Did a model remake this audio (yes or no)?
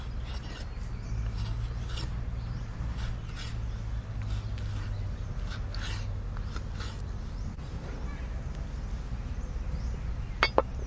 no